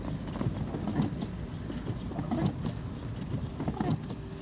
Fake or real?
real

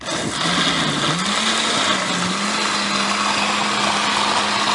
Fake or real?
real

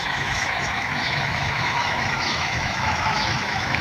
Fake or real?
fake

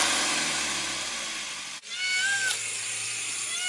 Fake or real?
real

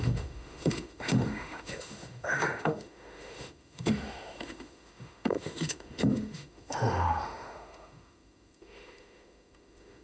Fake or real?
fake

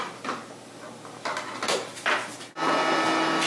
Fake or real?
real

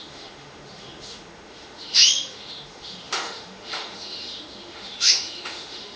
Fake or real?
fake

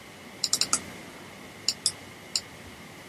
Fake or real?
real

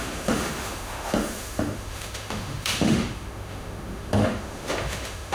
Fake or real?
fake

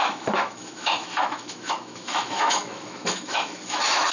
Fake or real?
fake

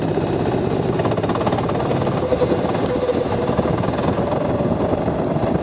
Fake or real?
real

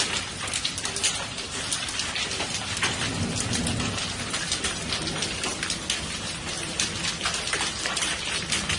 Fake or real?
real